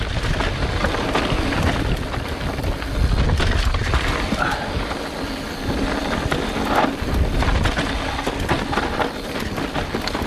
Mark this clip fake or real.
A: real